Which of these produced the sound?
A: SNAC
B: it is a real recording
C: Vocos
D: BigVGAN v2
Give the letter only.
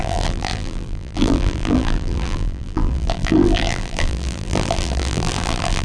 D